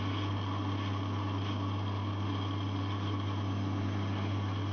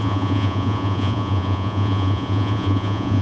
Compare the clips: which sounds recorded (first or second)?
first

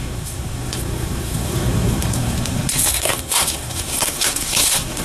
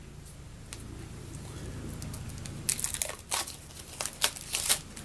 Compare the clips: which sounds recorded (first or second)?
second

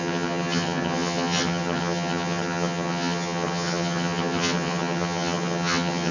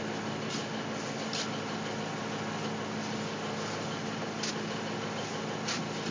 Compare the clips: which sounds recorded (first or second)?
second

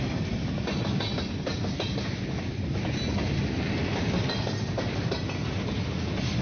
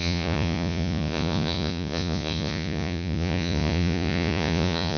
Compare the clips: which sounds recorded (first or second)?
first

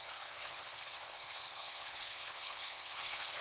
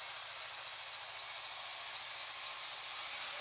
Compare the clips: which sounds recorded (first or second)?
second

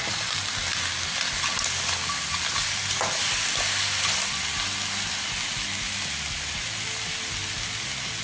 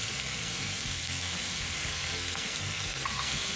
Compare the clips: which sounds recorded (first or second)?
first